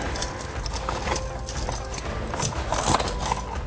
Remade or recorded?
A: recorded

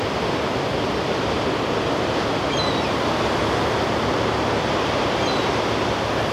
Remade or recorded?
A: recorded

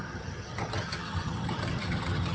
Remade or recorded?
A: remade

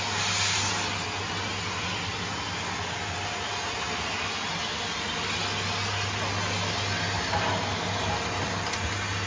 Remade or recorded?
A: recorded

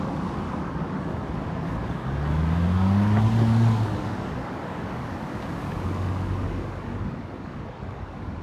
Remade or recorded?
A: remade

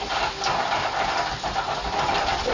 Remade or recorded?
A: recorded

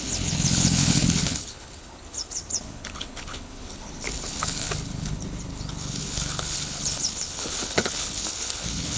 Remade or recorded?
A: remade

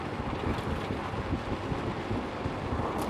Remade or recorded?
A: recorded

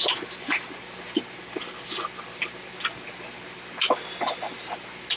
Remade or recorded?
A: recorded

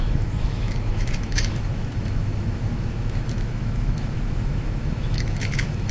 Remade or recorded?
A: remade